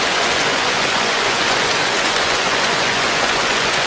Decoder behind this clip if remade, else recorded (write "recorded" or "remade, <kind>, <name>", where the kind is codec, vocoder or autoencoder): remade, vocoder, Vocos